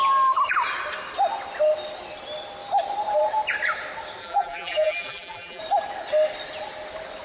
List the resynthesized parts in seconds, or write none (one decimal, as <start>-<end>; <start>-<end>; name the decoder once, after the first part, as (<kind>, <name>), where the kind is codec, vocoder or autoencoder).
4.2-5.6 (vocoder, BigVGAN v2)